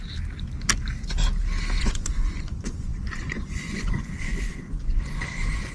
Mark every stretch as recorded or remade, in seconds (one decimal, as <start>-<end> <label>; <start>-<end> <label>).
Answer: 0.0-1.8 recorded; 1.8-5.7 remade